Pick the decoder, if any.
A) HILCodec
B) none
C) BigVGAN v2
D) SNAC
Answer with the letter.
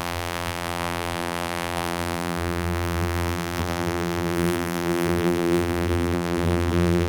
C